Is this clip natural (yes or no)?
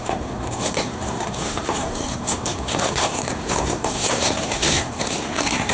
no